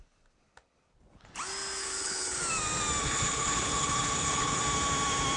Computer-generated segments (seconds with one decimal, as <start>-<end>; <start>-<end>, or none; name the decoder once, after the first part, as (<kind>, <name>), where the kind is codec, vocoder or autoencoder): 1.8-2.4 (codec, HILCodec); 3.0-4.6